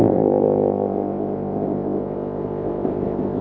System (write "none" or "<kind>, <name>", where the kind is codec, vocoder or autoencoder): codec, ZipCodec